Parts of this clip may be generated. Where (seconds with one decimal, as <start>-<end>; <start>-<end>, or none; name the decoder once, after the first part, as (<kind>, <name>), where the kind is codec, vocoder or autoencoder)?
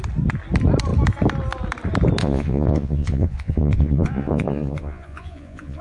2.2-5.8 (vocoder, Vocos)